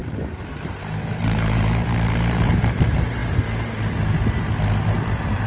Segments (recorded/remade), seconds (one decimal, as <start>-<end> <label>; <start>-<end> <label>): 0.0-3.2 remade; 3.2-4.8 recorded; 4.8-5.5 remade